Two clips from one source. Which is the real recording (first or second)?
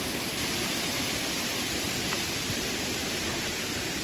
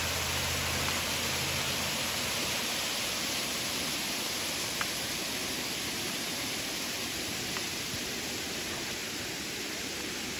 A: second